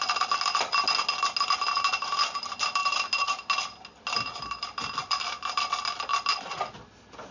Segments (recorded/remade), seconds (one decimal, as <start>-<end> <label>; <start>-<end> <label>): 0.0-7.3 recorded